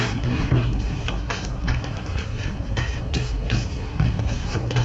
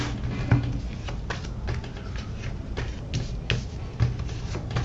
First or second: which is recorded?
second